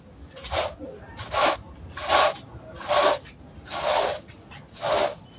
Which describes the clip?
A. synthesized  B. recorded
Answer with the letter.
B